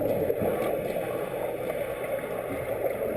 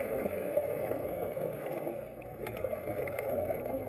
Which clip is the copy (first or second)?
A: second